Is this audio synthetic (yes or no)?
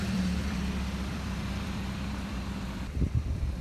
yes